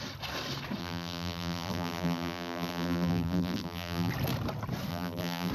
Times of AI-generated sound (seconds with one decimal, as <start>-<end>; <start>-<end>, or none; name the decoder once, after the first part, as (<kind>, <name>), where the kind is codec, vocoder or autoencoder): 0.8-4.1 (vocoder, BigVGAN v2); 4.9-5.5